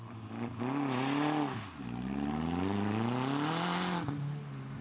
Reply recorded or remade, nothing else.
recorded